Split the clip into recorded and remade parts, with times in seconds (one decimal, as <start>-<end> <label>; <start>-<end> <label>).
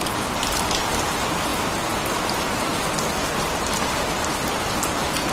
0.0-1.5 remade; 1.5-2.2 recorded; 2.2-2.7 remade; 2.7-5.3 recorded